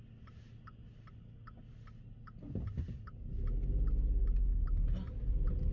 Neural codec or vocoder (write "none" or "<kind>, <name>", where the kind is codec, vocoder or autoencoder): none